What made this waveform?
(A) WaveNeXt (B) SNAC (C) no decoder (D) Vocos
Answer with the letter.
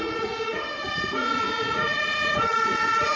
D